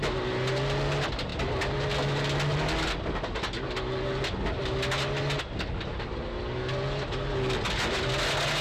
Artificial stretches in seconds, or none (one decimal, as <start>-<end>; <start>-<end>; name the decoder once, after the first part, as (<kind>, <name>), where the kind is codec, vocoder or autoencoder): none